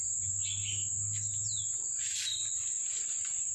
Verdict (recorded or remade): recorded